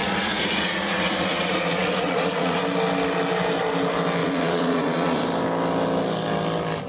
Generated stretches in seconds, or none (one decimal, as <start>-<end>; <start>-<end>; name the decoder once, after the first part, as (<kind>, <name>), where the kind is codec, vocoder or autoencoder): 0.0-2.6 (vocoder, Vocos); 4.2-5.2